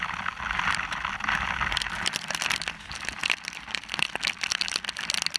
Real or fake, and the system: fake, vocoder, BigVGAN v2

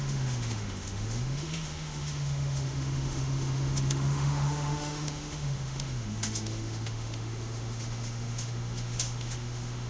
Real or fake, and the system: fake, autoencoder, DAC-VAE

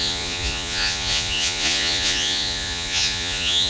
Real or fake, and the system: fake, vocoder, Vocos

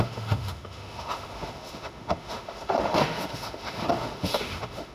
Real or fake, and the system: fake, autoencoder, DAC-VAE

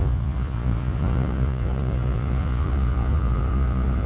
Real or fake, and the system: fake, vocoder, Vocos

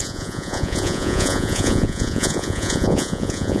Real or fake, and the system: fake, vocoder, Vocos